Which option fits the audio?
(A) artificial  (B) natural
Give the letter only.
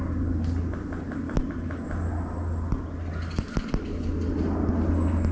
B